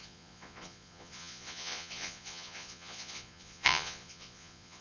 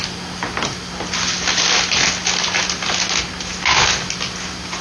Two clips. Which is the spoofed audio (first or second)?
first